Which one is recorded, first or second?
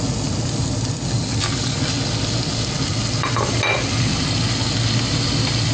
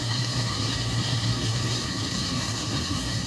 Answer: first